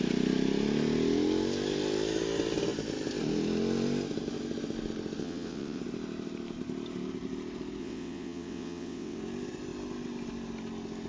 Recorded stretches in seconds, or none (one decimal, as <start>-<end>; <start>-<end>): 0.0-5.2; 5.8-7.8; 9.2-11.1